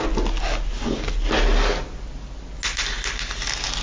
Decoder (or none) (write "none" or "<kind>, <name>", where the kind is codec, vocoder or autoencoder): none